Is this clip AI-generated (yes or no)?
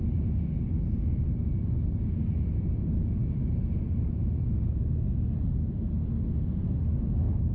no